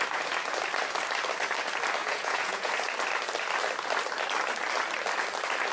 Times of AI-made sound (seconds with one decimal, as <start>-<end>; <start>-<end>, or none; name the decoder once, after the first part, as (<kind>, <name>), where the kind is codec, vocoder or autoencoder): 2.0-2.7 (vocoder, Vocos)